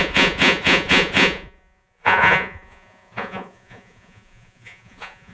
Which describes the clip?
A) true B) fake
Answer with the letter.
B